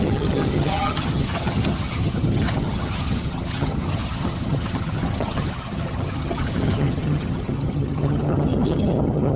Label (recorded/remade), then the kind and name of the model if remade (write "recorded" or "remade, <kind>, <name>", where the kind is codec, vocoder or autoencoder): remade, vocoder, HiFi-GAN